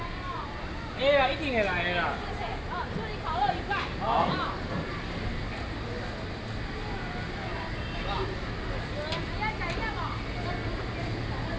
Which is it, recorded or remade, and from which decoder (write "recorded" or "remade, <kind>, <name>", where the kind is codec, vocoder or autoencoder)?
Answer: recorded